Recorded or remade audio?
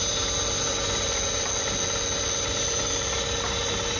recorded